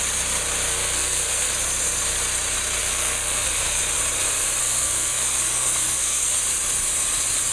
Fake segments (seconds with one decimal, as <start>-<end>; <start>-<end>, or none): 0.7-1.5; 2.8-3.8; 4.6-6.4